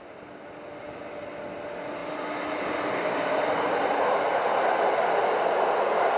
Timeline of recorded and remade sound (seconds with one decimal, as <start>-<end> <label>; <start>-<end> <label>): 0.0-6.2 recorded